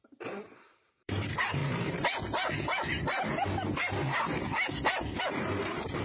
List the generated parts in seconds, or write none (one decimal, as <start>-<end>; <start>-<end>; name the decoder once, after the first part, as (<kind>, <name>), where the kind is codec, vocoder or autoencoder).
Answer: 0.0-1.6 (vocoder, BigVGAN v2); 5.2-6.0